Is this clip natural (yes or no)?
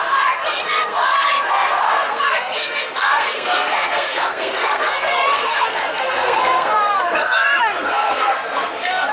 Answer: no